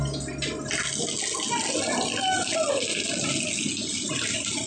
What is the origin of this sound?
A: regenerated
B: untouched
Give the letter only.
B